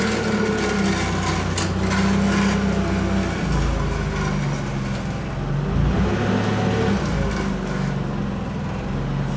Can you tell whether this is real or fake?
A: real